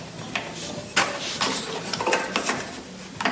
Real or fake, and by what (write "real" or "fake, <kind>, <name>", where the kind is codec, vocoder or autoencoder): real